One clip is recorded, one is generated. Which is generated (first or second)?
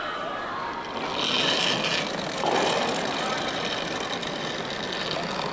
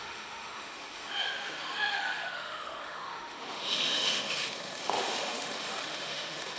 second